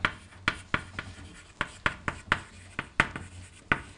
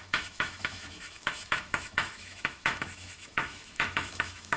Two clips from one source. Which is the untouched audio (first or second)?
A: first